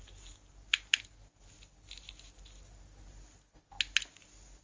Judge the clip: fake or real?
real